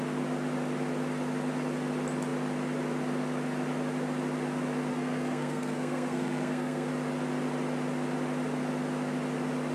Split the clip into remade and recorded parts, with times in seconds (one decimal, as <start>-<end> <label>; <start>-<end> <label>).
0.0-4.9 recorded; 4.9-6.9 remade; 6.9-9.7 recorded